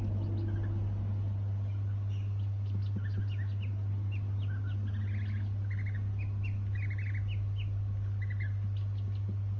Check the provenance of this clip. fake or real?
real